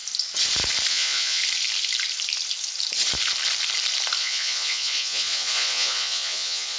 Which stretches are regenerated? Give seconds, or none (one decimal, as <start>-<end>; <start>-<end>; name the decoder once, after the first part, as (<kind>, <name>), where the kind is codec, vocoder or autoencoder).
0.9-1.4 (vocoder, Vocos); 4.2-6.8